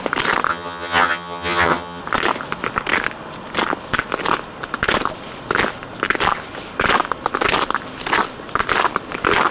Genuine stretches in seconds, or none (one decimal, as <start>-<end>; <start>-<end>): 0.0-0.5; 2.0-9.5